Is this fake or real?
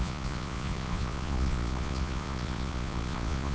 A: fake